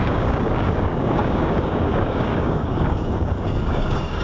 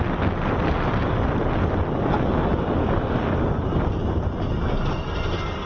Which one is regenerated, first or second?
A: first